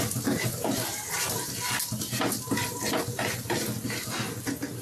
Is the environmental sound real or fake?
real